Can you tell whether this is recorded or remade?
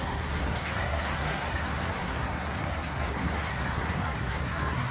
remade